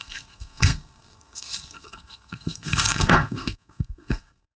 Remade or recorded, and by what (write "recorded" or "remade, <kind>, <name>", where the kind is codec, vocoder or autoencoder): remade, codec, SNAC